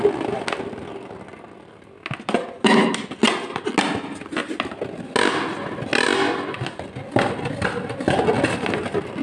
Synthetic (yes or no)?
no